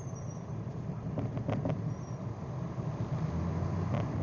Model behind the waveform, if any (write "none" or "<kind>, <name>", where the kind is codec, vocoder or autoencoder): none